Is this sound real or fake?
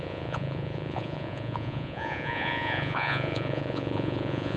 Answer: fake